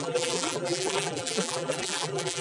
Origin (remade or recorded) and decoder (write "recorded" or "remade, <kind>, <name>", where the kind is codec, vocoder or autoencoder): remade, vocoder, BigVGAN v2